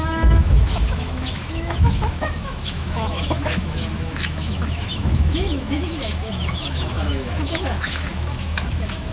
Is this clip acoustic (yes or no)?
no